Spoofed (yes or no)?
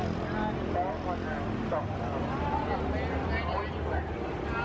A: no